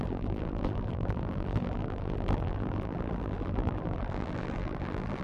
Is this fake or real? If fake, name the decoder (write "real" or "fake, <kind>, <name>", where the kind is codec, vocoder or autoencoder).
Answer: fake, vocoder, BigVGAN v2